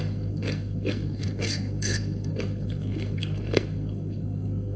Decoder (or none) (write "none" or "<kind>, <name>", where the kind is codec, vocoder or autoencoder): codec, SNAC